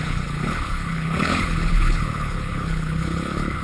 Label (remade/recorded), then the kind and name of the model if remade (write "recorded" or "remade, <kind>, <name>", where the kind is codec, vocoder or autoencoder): remade, codec, HILCodec